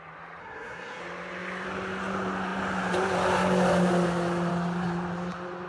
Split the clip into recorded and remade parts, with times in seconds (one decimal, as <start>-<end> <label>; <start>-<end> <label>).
0.0-0.4 recorded; 0.4-1.0 remade; 1.0-5.7 recorded